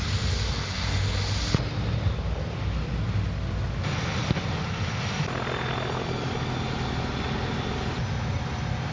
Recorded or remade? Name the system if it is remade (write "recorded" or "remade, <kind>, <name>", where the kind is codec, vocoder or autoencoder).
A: recorded